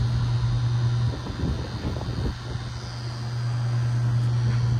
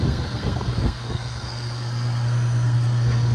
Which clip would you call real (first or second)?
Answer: first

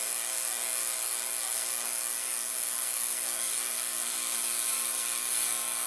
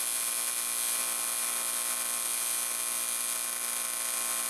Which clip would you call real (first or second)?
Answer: second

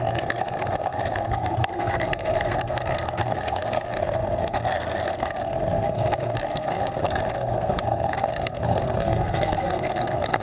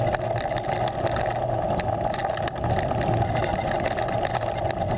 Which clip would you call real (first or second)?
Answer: second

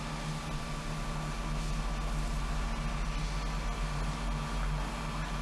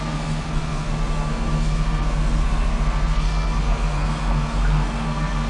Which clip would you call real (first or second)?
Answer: first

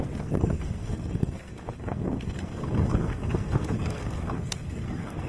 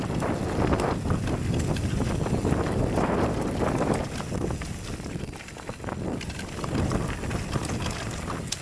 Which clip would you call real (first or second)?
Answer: second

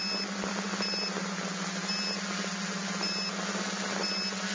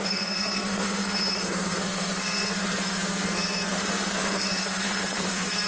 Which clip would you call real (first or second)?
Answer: first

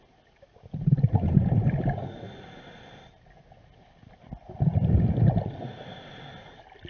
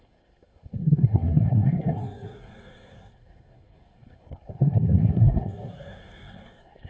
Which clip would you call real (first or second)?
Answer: first